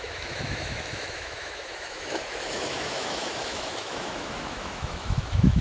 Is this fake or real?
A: fake